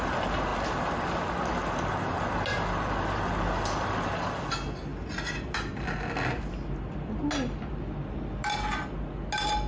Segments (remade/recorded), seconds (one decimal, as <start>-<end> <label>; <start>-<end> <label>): 0.0-9.7 recorded